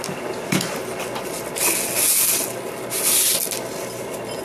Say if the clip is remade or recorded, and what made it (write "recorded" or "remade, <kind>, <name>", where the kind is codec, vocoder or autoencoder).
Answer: recorded